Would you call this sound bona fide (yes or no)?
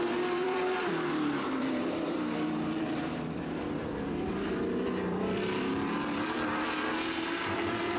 no